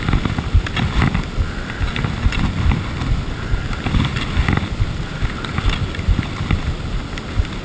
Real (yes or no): yes